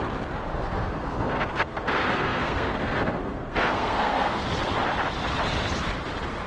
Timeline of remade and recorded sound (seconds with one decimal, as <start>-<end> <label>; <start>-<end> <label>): 0.0-0.5 recorded; 0.5-4.4 remade; 4.4-6.5 recorded